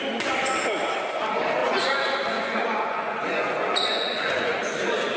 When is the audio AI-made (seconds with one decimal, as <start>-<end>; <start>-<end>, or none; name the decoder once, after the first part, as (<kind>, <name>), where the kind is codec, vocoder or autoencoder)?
1.6-4.7 (vocoder, Vocos)

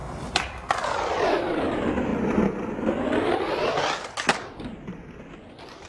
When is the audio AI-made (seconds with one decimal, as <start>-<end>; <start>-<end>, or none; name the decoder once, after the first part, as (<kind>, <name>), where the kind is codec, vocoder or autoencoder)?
0.0-2.1 (vocoder, BigVGAN v2)

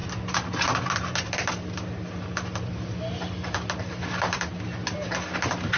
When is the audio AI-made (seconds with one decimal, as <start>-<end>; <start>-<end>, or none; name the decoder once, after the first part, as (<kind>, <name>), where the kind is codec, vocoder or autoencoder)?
none

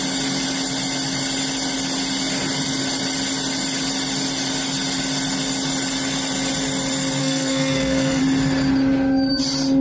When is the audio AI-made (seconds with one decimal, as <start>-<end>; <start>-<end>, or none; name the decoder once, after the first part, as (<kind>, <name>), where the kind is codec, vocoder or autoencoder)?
7.2-8.2 (codec, SNAC)